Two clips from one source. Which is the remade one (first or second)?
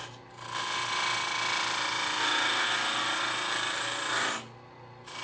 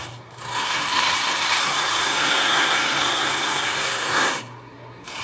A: second